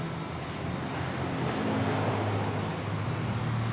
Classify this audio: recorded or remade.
recorded